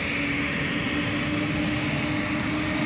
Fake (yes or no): no